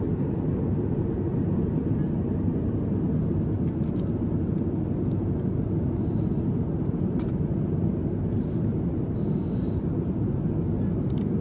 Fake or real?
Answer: real